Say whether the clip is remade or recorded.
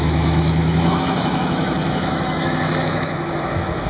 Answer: remade